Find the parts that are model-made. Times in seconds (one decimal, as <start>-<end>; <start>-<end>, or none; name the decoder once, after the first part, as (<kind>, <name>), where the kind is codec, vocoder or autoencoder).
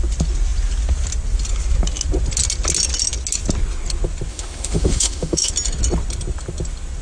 4.3-5.5 (autoencoder, DAC-VAE)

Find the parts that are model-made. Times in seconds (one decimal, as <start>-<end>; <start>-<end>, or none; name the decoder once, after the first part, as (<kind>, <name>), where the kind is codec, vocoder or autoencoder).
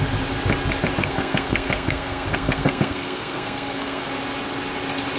1.0-4.1 (codec, SNAC)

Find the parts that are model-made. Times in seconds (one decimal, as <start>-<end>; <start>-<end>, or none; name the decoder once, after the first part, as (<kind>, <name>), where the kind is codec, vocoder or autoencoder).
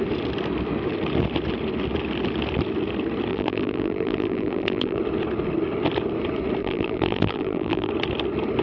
3.3-5.0 (vocoder, BigVGAN v2); 6.6-7.9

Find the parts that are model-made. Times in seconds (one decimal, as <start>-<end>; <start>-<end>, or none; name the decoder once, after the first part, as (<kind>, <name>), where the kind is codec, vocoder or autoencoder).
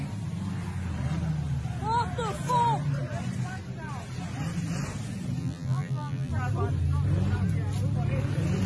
5.4-6.3 (vocoder, BigVGAN v2)